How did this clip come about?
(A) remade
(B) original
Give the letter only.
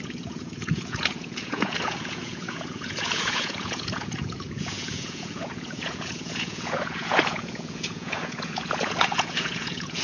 A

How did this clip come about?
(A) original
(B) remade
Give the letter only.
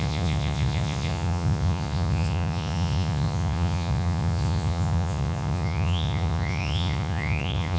B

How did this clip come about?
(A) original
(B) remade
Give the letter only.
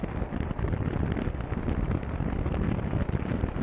B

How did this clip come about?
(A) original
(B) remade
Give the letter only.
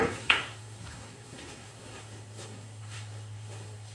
B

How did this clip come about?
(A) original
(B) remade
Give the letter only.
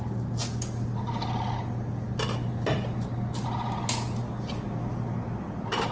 A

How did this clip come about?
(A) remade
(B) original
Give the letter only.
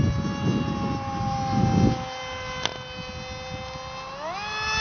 B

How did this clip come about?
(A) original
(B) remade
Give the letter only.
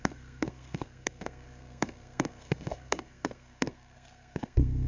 B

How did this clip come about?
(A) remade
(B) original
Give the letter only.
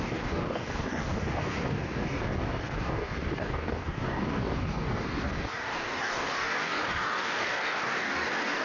A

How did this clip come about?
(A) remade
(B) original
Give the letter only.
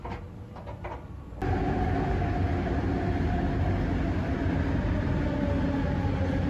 B